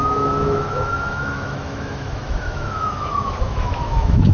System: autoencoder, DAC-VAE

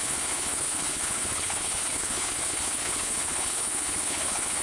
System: codec, HILCodec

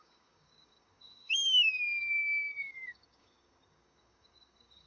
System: codec, DAC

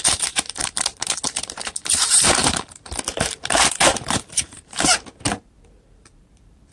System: vocoder, BigVGAN v2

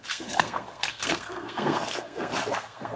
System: codec, SNAC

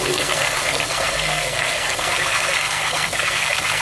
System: codec, SNAC